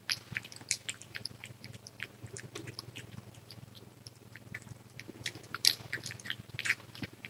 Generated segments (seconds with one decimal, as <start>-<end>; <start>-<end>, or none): 0.0-7.3